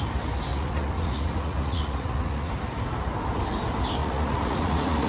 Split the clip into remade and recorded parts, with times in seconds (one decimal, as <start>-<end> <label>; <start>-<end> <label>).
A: 0.0-0.5 recorded; 0.5-2.5 remade; 2.5-4.0 recorded; 4.0-5.1 remade